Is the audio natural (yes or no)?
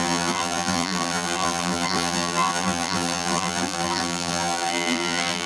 no